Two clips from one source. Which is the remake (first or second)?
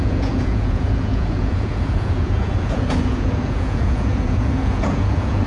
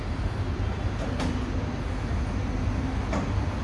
first